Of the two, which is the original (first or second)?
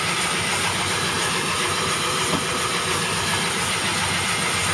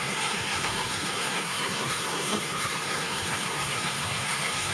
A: first